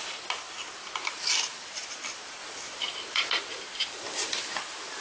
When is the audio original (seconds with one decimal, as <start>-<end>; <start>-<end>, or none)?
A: 0.0-5.0

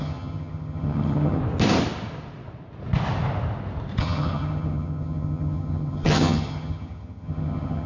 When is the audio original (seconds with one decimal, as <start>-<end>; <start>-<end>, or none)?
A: 1.4-4.0